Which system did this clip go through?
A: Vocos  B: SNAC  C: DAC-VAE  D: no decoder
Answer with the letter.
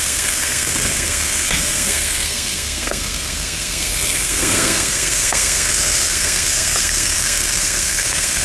B